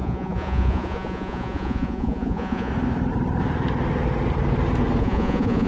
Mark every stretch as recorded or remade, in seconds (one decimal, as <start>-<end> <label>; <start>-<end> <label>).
0.0-2.7 remade; 2.7-5.0 recorded; 5.0-5.7 remade